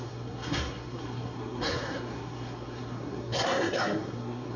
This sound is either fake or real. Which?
fake